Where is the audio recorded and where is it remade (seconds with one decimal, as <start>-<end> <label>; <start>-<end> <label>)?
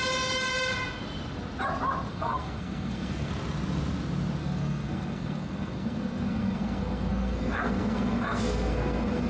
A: 0.0-2.1 recorded; 2.1-3.3 remade; 3.3-4.4 recorded; 4.4-9.3 remade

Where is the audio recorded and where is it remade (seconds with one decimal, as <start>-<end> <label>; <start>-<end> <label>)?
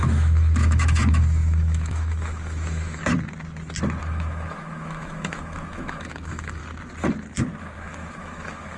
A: 0.0-3.0 remade; 3.0-4.0 recorded; 4.0-6.6 remade; 6.6-7.6 recorded; 7.6-8.8 remade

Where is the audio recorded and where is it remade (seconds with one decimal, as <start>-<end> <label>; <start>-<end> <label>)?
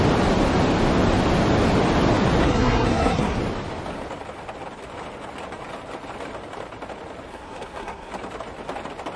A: 0.0-2.4 recorded; 2.4-3.4 remade; 3.4-7.3 recorded; 7.3-8.1 remade; 8.1-9.2 recorded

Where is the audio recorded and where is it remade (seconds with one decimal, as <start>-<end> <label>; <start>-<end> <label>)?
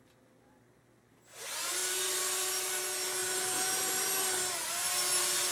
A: 0.0-1.8 recorded; 1.8-2.8 remade; 2.8-4.6 recorded; 4.6-5.1 remade; 5.1-5.5 recorded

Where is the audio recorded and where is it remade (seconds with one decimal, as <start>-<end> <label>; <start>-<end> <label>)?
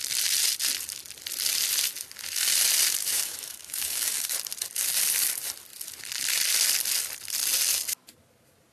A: 0.0-3.0 recorded; 3.0-4.3 remade; 4.3-8.7 recorded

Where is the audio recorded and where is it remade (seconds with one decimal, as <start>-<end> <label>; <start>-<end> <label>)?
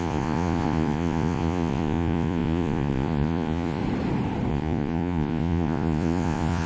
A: 0.0-3.8 remade; 3.8-4.5 recorded; 4.5-6.7 remade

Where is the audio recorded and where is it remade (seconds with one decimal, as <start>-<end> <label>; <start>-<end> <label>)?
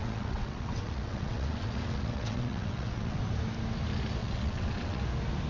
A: 0.0-3.2 remade; 3.2-4.2 recorded; 4.2-5.0 remade; 5.0-5.5 recorded